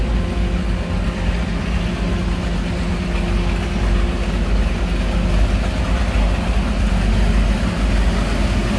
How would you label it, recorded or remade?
recorded